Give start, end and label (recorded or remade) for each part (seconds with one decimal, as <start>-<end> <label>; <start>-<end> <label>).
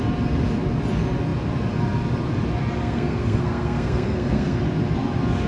0.0-2.8 recorded; 2.8-4.6 remade; 4.6-5.5 recorded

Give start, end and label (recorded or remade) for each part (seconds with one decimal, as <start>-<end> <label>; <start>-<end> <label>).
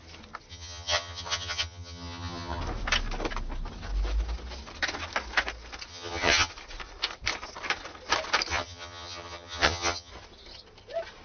0.0-0.5 recorded; 0.5-2.6 remade; 2.6-5.9 recorded; 5.9-6.5 remade; 6.5-8.5 recorded; 8.5-10.1 remade; 10.1-11.2 recorded